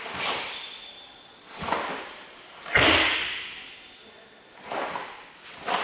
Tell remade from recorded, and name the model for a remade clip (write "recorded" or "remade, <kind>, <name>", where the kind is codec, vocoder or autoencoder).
recorded